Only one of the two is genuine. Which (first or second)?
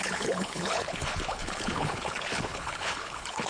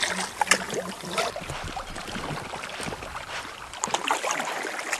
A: second